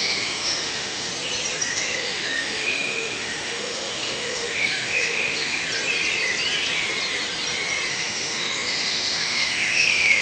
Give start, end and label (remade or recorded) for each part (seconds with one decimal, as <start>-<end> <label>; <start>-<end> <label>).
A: 0.0-1.1 remade; 1.1-1.7 recorded; 1.7-5.6 remade; 5.6-7.9 recorded; 7.9-10.2 remade